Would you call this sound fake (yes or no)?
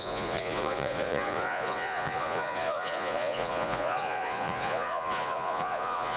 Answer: yes